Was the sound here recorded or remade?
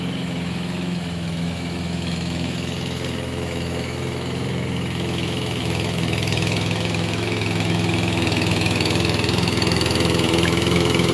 remade